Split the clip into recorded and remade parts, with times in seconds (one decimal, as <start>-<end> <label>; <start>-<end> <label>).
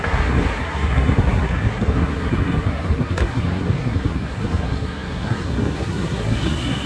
0.0-6.9 remade